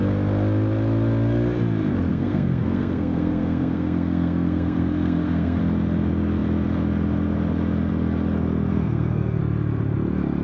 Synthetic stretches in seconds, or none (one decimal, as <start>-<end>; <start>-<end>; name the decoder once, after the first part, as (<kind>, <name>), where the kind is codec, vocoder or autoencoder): 2.1-5.6 (codec, SNAC); 8.7-9.4